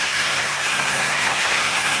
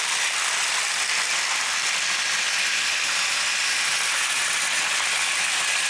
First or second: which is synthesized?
first